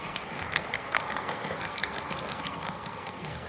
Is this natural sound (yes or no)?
no